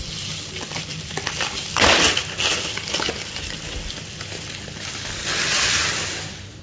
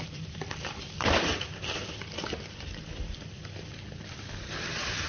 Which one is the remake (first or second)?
second